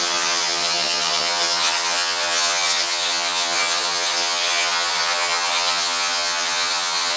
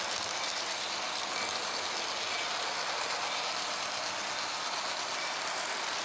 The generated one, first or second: first